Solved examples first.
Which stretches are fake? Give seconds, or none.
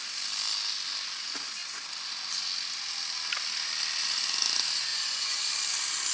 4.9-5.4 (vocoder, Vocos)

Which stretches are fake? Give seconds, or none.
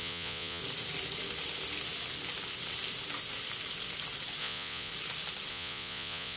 0.0-0.6 (vocoder, Vocos); 4.4-4.9; 5.5-6.4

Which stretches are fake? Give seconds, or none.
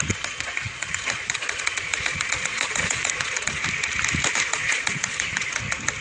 0.0-3.6 (vocoder, Vocos); 4.5-5.6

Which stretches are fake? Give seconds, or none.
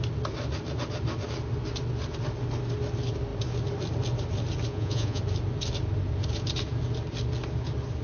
4.7-5.2 (vocoder, Vocos)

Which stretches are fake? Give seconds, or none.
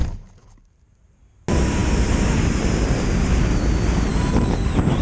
none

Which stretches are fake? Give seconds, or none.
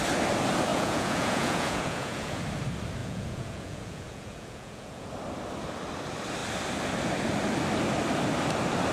0.7-2.4 (vocoder, Vocos); 3.0-5.1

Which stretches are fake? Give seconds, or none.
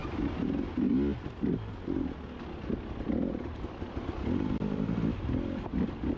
none